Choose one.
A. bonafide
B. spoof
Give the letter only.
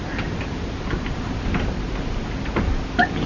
A